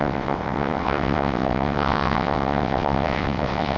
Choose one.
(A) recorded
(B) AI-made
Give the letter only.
B